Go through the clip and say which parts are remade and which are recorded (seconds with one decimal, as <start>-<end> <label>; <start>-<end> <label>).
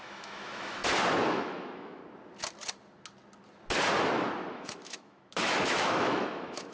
0.0-0.8 remade; 0.8-1.3 recorded; 1.3-2.0 remade; 2.0-4.5 recorded; 4.5-6.7 remade